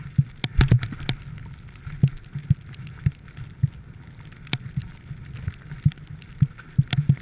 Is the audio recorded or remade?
recorded